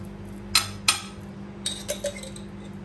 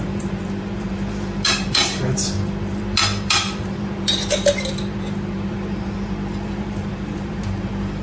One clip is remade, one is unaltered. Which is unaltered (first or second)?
first